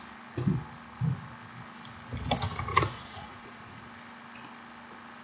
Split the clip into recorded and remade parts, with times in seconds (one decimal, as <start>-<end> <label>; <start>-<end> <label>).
0.0-2.7 recorded; 2.7-3.8 remade; 3.8-5.2 recorded